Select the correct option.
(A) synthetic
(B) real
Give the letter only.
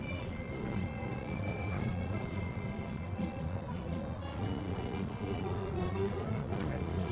A